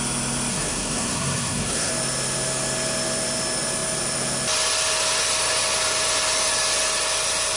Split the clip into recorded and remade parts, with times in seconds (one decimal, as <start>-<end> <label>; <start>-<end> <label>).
0.0-0.5 recorded; 0.5-1.9 remade; 1.9-7.6 recorded